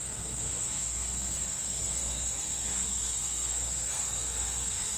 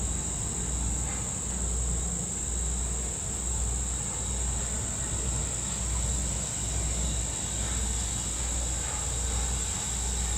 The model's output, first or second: first